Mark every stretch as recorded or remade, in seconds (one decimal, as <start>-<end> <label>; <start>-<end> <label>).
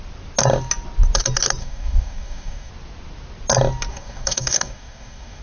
0.0-1.6 recorded; 1.6-2.7 remade; 2.7-3.9 recorded; 3.9-5.4 remade